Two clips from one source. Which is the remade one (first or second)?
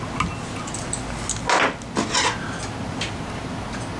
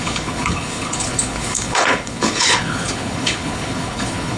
second